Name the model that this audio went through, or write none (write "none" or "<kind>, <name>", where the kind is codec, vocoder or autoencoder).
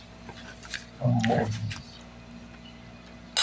none